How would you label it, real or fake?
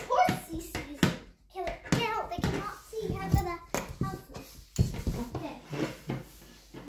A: real